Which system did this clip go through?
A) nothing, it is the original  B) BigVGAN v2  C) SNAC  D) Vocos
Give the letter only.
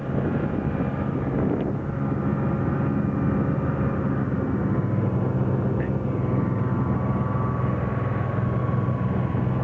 A